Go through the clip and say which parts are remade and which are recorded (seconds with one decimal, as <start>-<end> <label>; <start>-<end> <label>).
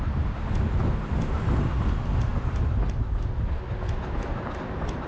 0.0-5.1 recorded